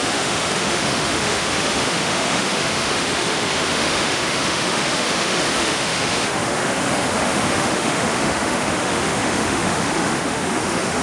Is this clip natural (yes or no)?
no